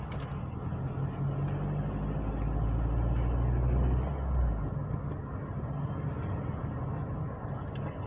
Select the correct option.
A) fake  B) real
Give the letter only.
B